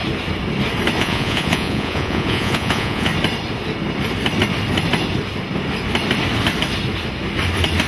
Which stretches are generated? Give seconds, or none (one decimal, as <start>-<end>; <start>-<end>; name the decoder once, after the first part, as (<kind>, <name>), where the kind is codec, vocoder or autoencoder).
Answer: 1.0-3.1 (vocoder, Vocos)